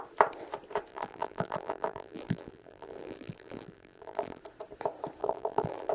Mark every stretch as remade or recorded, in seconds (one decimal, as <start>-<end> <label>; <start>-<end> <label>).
0.0-0.9 recorded; 0.9-4.4 remade; 4.4-5.2 recorded; 5.2-5.9 remade